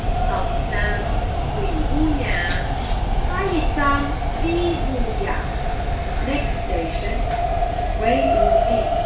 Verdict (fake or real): real